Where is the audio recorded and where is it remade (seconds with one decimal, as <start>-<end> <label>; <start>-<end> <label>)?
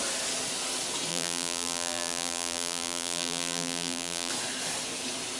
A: 0.0-1.1 recorded; 1.1-4.3 remade; 4.3-5.4 recorded